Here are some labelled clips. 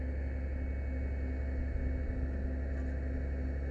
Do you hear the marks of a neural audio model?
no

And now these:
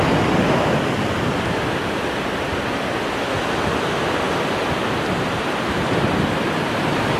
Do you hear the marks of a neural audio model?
no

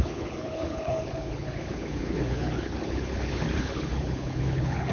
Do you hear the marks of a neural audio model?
yes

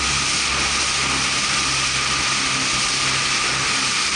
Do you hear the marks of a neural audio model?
no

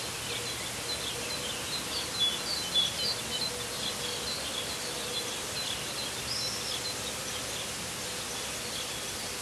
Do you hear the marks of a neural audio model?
no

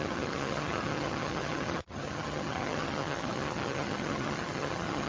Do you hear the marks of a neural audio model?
yes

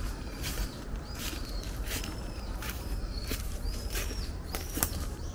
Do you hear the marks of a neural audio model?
yes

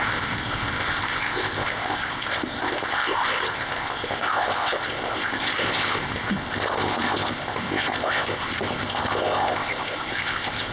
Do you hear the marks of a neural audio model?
yes